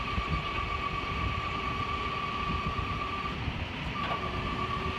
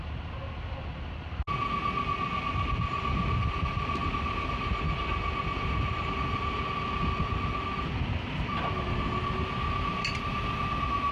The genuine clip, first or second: second